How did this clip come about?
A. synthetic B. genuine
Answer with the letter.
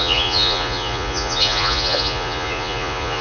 A